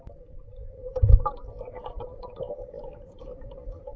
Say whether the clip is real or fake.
real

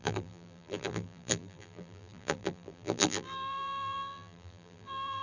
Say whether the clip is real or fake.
fake